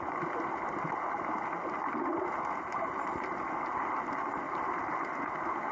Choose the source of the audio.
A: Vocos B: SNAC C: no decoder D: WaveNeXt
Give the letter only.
C